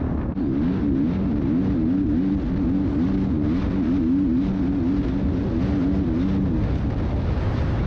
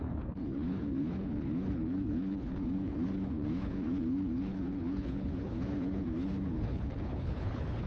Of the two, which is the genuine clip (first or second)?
first